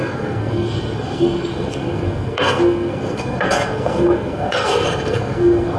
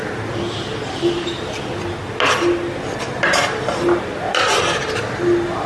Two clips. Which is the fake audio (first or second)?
first